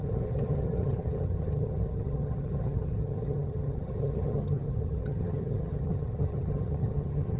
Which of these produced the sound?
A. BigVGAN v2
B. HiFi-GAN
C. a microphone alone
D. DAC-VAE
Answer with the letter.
B